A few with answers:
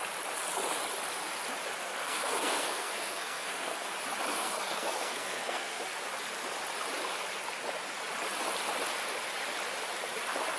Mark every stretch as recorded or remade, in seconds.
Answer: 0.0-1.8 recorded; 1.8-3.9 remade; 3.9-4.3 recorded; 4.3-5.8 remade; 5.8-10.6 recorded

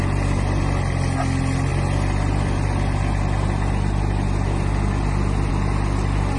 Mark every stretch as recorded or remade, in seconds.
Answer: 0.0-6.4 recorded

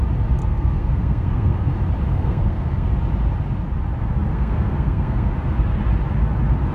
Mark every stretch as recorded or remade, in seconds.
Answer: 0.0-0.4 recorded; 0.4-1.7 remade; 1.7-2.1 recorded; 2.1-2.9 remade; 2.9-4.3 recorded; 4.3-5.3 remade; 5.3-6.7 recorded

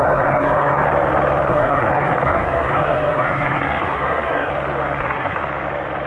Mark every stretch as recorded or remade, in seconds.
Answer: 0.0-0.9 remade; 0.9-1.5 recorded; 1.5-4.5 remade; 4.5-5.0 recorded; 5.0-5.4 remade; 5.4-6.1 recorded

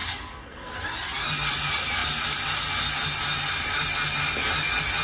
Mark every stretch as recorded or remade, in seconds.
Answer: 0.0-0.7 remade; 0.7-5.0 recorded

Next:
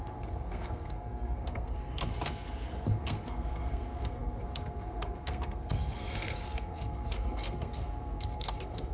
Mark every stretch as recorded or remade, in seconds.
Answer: 0.0-8.9 remade